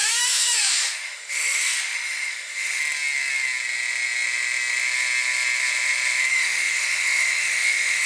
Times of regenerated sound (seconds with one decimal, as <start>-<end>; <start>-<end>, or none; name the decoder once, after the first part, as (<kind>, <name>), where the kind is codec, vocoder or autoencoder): 0.0-2.8 (autoencoder, DAC-VAE); 6.3-8.1